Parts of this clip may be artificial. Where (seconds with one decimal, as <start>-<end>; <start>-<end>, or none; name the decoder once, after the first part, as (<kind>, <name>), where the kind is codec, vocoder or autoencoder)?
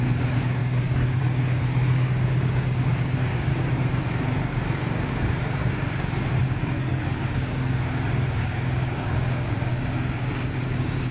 0.0-3.5 (codec, DAC); 4.1-11.1